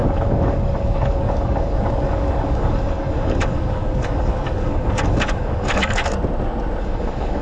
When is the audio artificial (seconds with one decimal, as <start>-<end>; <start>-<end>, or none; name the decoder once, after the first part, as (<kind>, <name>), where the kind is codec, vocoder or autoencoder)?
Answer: 0.0-6.0 (codec, DAC); 6.8-7.4